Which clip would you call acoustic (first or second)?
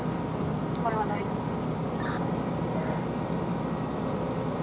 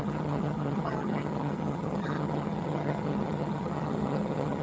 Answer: first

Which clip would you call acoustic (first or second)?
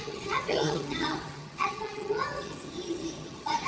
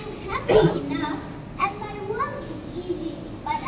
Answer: second